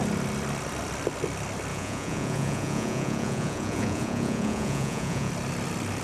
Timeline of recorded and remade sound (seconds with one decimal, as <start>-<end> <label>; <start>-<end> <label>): 0.0-1.7 recorded; 1.7-5.3 remade; 5.3-6.0 recorded